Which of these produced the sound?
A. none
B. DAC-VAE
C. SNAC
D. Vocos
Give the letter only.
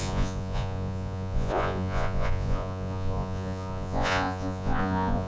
D